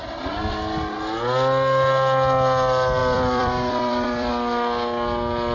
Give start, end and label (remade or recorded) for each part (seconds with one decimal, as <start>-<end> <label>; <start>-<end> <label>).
0.0-3.0 recorded; 3.0-4.3 remade; 4.3-5.5 recorded